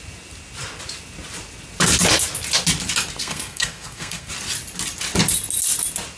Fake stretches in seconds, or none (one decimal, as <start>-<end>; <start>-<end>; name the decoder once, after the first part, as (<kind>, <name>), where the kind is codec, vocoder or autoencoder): 3.2-4.3 (codec, SNAC)